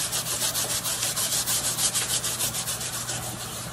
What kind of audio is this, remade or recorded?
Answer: recorded